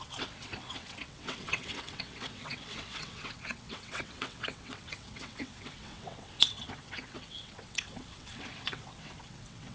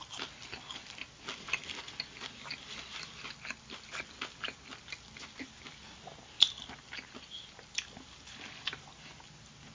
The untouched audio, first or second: second